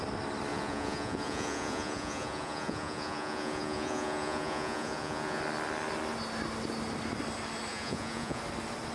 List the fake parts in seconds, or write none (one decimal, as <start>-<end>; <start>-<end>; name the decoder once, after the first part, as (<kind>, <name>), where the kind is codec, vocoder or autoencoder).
0.5-5.4 (vocoder, Vocos); 7.7-8.4

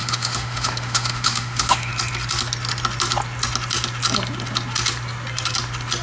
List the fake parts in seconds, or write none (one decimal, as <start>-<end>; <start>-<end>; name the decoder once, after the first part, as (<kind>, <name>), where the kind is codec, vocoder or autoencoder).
0.0-1.9 (autoencoder, DAC-VAE)